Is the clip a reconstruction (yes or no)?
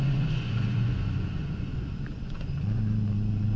yes